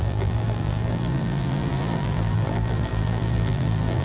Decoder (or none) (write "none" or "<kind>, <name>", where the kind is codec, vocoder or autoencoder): vocoder, BigVGAN v2